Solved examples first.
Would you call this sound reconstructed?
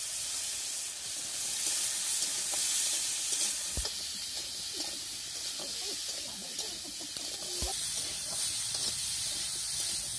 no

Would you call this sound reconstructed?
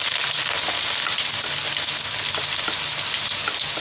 no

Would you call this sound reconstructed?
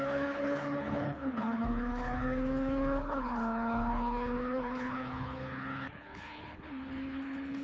yes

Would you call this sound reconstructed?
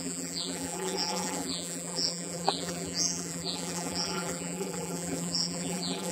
yes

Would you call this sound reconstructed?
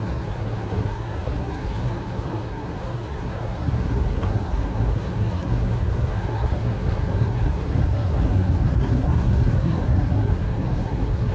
yes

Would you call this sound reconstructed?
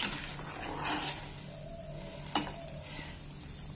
no